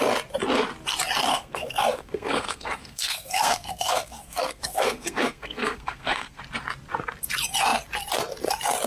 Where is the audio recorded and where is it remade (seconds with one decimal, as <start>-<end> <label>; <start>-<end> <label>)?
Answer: 0.0-1.3 recorded; 1.3-6.4 remade; 6.4-8.9 recorded